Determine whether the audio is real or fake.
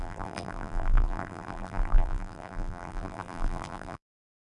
fake